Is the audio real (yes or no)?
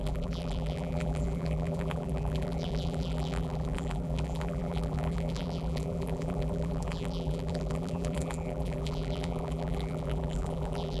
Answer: no